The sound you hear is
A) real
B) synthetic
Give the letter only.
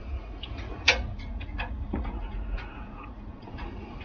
B